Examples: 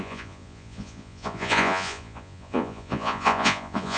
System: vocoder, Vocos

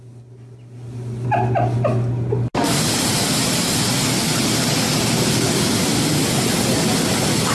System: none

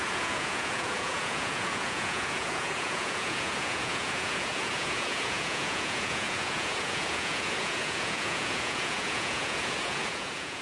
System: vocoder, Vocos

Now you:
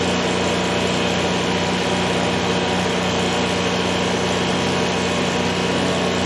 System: none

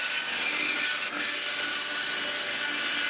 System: none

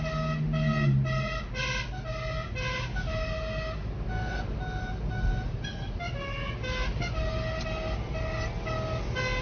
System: none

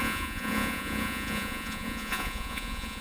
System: vocoder, Vocos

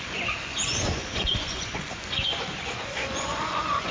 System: vocoder, Vocos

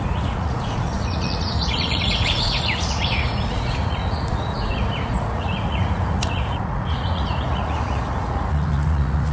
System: vocoder, Vocos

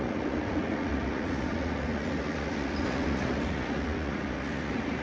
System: vocoder, Vocos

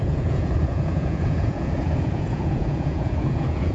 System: vocoder, Vocos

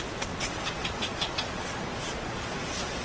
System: vocoder, Vocos